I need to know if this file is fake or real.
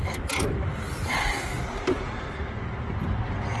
real